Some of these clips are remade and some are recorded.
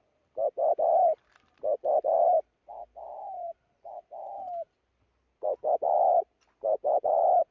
recorded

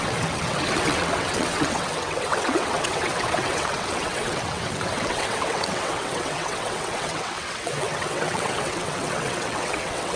remade